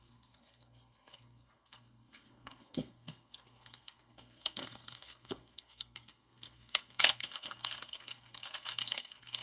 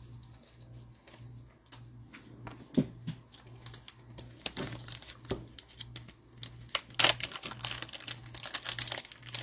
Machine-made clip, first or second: first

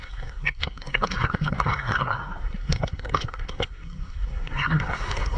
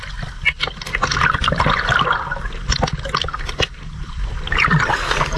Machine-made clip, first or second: first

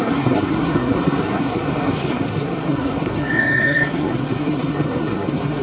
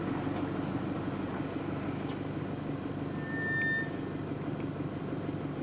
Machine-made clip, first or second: first